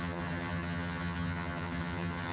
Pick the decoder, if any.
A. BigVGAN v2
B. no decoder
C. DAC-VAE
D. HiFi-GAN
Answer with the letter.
D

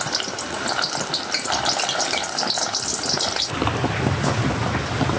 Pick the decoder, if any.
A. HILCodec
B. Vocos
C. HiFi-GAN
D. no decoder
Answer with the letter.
D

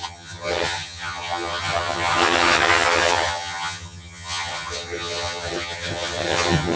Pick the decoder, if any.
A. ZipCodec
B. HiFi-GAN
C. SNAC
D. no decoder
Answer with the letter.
B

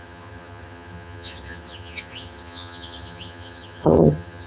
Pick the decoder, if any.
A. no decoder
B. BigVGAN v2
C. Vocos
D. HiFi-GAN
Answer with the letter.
D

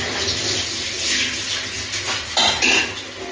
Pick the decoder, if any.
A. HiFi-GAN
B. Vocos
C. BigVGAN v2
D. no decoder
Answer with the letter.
D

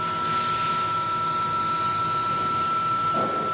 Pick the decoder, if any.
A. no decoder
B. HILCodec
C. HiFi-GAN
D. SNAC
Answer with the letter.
A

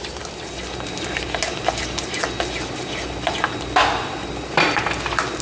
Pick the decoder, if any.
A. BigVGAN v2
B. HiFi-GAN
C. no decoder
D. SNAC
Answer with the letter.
C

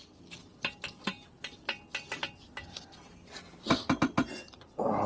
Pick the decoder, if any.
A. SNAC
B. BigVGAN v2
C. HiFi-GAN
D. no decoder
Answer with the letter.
D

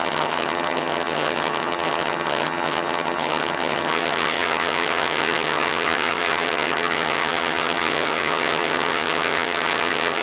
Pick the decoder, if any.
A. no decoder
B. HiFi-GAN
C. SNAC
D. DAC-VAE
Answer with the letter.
B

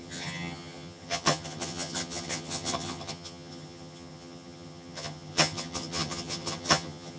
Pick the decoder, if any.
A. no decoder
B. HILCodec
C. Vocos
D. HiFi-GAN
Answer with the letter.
D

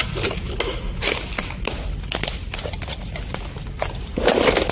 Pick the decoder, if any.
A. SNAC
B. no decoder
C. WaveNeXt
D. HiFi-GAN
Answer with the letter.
B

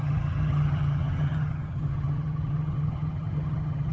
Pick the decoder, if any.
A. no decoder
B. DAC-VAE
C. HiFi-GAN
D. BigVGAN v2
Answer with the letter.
C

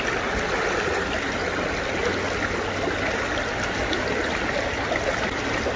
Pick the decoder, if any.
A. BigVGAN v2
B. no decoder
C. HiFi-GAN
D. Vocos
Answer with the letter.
B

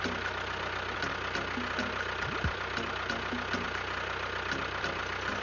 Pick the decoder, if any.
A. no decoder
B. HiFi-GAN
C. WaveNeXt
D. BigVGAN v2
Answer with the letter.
A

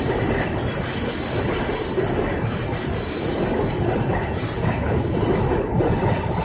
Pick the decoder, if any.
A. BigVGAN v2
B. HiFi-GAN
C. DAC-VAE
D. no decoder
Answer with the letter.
D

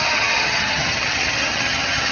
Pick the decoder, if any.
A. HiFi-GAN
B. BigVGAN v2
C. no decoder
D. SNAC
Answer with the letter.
A